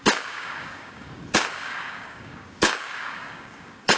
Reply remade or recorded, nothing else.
remade